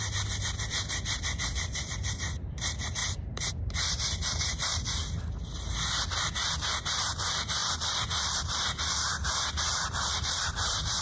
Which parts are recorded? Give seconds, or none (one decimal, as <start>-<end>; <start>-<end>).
none